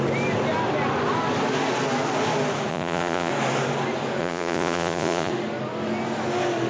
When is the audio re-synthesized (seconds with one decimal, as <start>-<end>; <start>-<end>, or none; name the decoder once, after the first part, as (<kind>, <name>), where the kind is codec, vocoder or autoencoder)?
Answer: 2.7-3.3 (vocoder, Vocos); 4.2-5.3